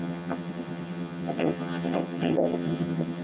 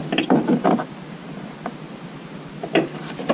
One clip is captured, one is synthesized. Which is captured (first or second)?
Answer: second